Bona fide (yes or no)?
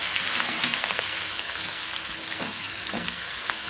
no